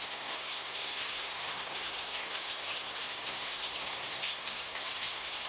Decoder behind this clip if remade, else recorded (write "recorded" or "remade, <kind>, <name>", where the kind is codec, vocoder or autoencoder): remade, codec, SNAC